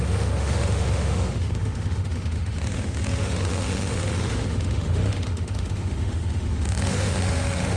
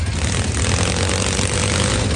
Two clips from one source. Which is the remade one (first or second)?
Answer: first